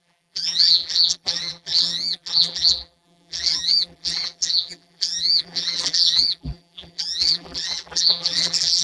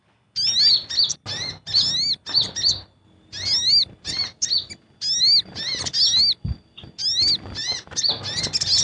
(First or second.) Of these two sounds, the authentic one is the second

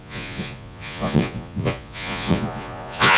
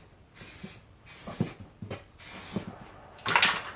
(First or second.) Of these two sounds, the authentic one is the second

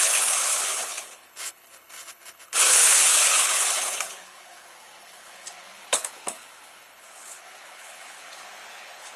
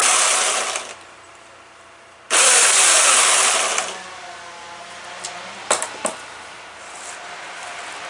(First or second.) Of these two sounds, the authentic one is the second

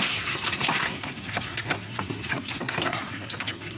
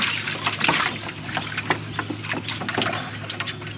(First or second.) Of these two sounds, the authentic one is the second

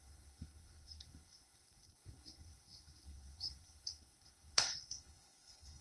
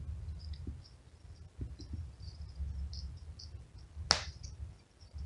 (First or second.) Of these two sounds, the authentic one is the second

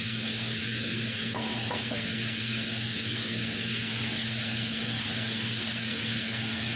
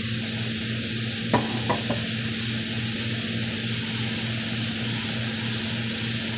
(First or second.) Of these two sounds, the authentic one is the second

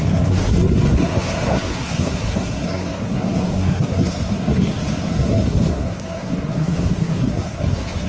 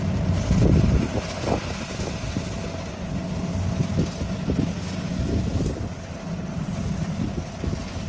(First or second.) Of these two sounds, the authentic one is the second